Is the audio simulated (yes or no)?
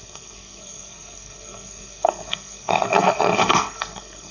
yes